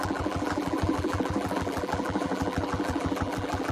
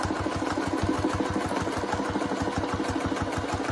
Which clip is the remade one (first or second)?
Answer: first